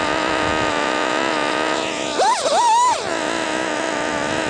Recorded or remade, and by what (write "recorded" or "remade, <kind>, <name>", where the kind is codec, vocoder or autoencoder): recorded